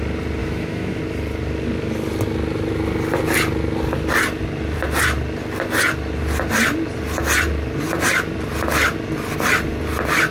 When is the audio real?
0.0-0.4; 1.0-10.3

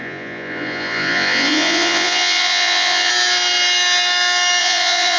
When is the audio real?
3.1-4.6

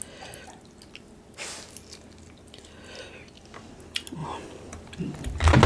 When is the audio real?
0.0-5.7

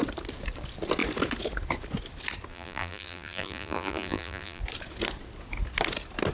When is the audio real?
0.0-2.5; 4.6-6.3

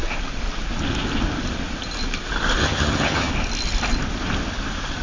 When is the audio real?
0.0-2.6; 3.3-5.0